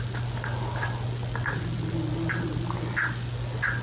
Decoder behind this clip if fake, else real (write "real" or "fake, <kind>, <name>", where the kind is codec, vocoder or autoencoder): real